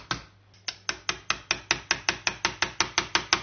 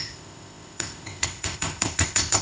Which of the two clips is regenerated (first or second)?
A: second